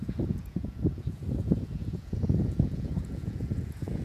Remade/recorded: remade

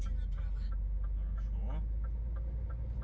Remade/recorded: recorded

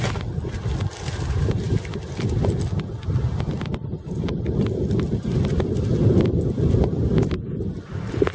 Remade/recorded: recorded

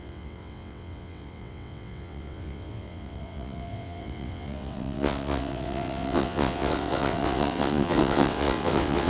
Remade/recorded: remade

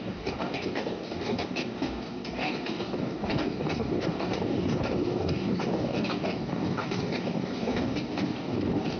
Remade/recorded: remade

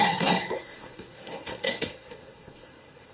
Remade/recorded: remade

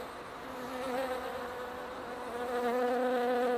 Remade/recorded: recorded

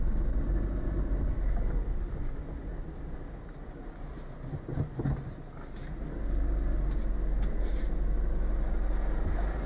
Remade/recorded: recorded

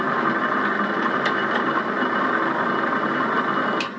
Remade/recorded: recorded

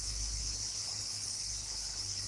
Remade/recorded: remade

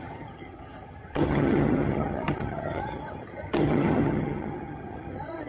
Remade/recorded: remade